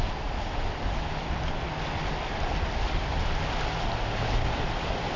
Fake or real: real